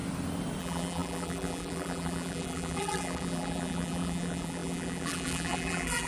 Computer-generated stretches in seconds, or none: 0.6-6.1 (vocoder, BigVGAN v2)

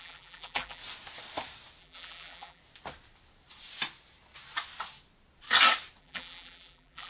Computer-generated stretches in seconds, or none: 0.0-0.8 (vocoder, BigVGAN v2); 1.8-2.6; 6.0-7.1

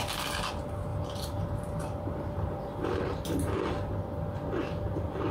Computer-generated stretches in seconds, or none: 0.9-3.0 (vocoder, BigVGAN v2)

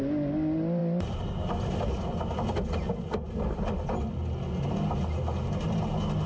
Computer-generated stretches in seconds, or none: none